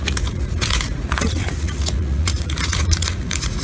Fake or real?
fake